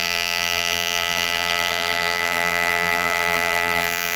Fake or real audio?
fake